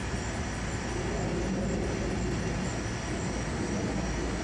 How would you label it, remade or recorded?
recorded